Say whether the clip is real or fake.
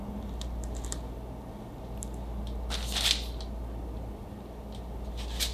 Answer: real